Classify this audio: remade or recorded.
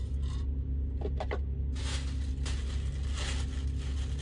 recorded